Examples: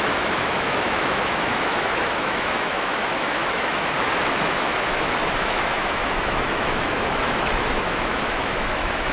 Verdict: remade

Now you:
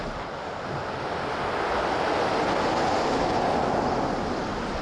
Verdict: recorded